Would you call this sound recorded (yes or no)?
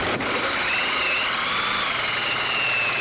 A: yes